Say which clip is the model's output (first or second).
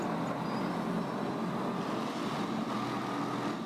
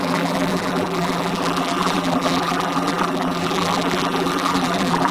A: second